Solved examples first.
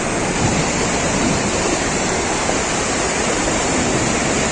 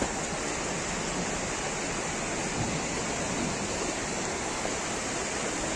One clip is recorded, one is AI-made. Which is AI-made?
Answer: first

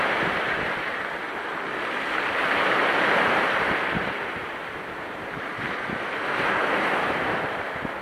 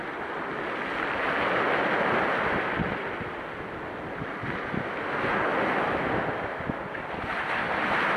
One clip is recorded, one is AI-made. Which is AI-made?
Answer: first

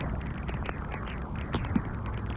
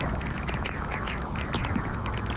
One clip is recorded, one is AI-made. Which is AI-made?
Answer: second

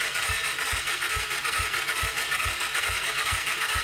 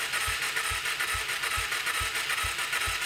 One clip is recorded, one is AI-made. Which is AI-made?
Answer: first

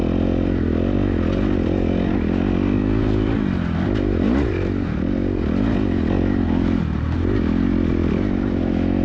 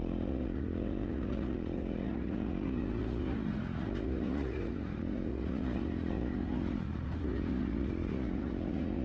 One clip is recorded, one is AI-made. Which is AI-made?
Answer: second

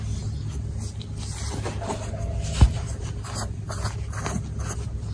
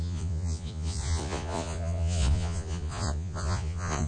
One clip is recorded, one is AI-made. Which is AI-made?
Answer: second